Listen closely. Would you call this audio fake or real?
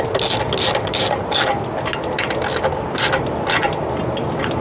real